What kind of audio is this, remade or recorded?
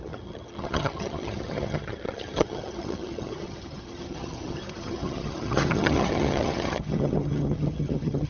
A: remade